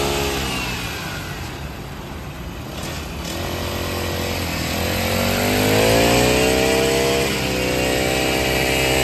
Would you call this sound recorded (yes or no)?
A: yes